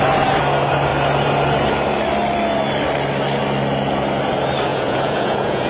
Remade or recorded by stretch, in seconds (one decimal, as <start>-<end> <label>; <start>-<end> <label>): 0.0-4.7 recorded; 4.7-5.7 remade